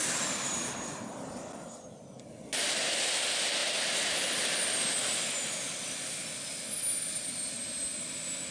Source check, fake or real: real